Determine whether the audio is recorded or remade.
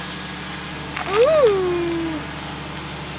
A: recorded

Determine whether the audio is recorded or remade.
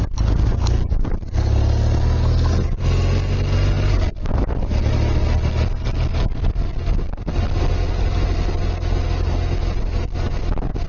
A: recorded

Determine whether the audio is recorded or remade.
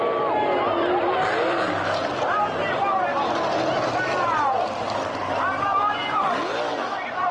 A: recorded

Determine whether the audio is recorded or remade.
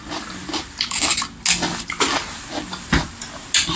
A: recorded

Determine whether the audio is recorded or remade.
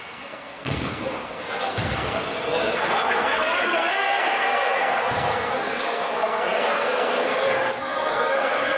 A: remade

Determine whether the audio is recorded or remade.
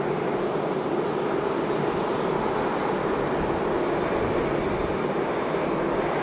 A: recorded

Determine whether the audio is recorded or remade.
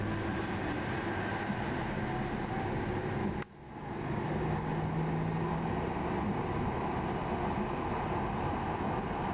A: recorded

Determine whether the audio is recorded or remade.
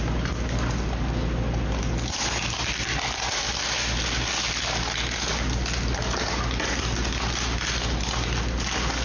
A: recorded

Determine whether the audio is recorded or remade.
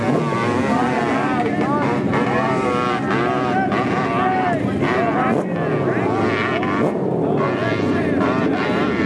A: recorded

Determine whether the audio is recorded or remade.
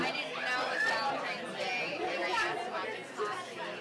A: recorded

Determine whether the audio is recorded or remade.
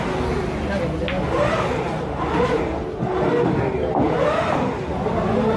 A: recorded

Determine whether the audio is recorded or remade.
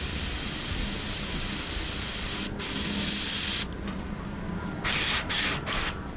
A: remade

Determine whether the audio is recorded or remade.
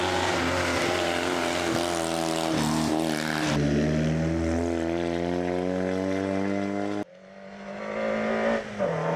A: recorded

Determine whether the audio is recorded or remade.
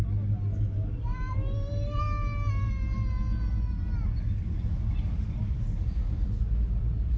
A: recorded